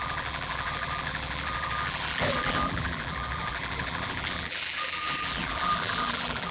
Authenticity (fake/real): fake